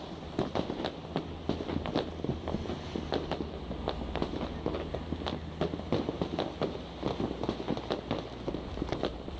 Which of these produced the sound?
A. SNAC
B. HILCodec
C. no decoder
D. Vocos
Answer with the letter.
C